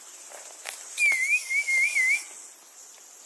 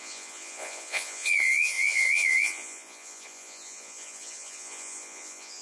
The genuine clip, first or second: first